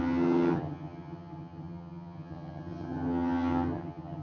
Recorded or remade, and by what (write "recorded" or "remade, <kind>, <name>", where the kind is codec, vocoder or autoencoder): remade, vocoder, HiFi-GAN